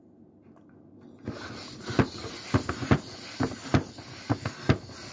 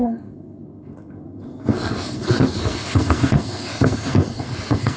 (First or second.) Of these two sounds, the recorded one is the first